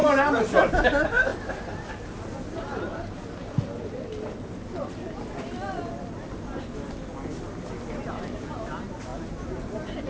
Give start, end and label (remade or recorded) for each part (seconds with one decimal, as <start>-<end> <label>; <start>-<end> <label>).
0.0-10.1 recorded

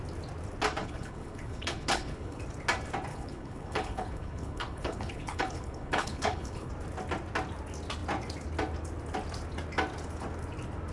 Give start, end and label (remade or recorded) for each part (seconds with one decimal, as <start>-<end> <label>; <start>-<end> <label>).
0.0-0.8 recorded; 0.8-2.4 remade; 2.4-3.1 recorded; 3.1-6.7 remade; 6.7-10.9 recorded

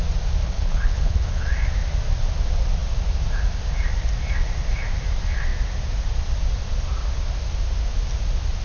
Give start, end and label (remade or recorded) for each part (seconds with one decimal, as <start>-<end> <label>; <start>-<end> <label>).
0.0-0.4 recorded; 0.4-1.5 remade; 1.5-8.6 recorded

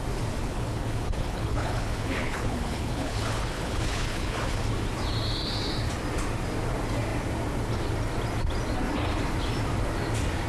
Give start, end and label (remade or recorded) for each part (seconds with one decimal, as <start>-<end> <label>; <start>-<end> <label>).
0.0-0.4 recorded; 0.4-4.6 remade; 4.6-10.5 recorded

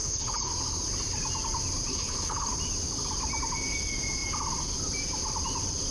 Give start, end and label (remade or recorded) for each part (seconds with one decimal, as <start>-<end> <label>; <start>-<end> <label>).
0.0-0.5 remade; 0.5-1.9 recorded; 1.9-2.5 remade; 2.5-5.9 recorded

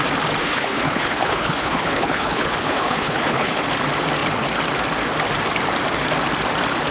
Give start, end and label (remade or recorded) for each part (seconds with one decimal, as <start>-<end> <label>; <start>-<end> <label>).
0.0-0.4 recorded; 0.4-3.5 remade; 3.5-6.9 recorded